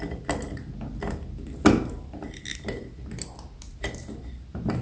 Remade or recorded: recorded